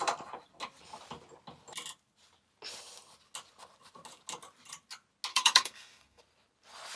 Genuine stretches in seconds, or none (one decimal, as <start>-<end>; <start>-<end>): 0.0-5.3; 6.2-7.0